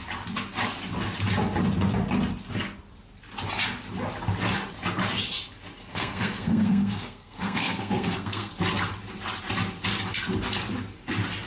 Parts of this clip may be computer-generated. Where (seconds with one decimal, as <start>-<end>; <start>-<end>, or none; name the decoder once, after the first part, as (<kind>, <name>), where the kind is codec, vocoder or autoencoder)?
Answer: 5.9-8.5 (codec, SNAC)